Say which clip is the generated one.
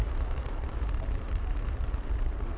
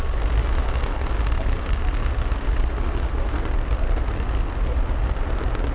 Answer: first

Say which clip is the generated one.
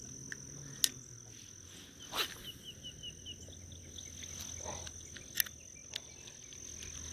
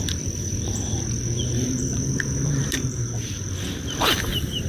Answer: second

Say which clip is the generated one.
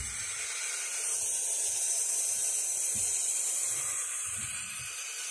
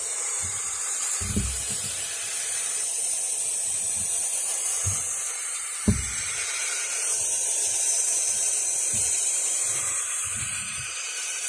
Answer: second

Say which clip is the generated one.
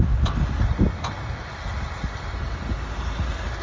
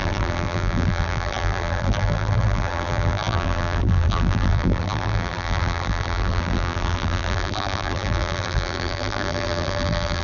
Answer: second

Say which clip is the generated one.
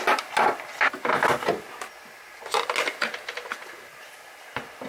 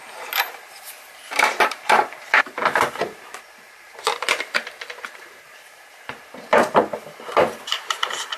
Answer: second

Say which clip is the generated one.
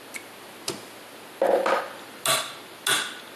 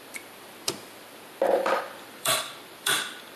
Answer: second